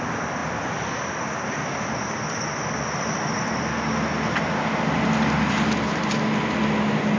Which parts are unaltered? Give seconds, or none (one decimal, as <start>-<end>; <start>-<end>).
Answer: 0.0-7.2